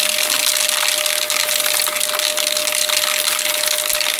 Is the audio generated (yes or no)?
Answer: no